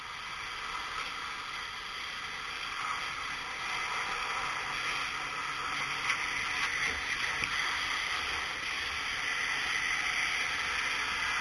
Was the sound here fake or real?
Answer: real